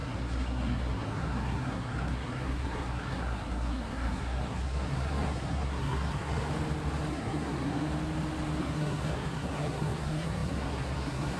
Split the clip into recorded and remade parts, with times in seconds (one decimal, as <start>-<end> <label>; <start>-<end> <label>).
0.0-6.5 remade; 6.5-7.1 recorded; 7.1-7.9 remade; 7.9-8.6 recorded; 8.6-11.4 remade